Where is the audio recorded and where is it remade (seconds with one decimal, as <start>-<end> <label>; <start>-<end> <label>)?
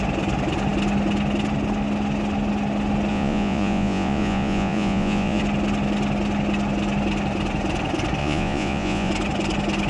0.0-3.1 recorded; 3.1-5.4 remade; 5.4-8.2 recorded; 8.2-9.1 remade; 9.1-9.9 recorded